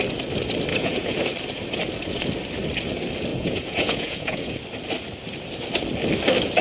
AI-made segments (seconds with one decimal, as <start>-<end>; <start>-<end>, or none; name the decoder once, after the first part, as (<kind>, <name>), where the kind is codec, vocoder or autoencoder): 0.7-1.2 (vocoder, Vocos); 3.3-4.5